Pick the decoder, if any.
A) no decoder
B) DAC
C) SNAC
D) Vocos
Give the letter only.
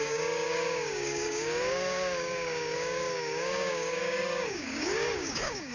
B